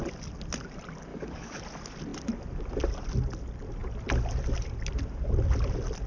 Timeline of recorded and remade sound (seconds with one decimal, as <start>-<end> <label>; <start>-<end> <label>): 0.0-1.1 recorded; 1.1-1.6 remade; 1.6-6.1 recorded